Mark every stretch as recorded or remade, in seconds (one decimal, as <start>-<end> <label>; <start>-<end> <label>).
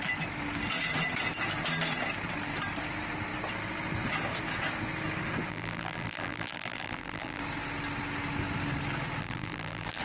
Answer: 0.0-5.5 recorded; 5.5-7.4 remade; 7.4-9.2 recorded; 9.2-10.0 remade